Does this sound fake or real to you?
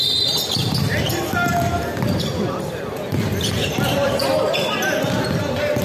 real